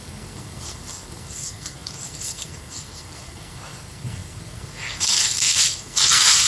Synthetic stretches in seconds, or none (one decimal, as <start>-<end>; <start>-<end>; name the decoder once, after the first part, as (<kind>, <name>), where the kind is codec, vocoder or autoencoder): 0.0-6.5 (codec, SNAC)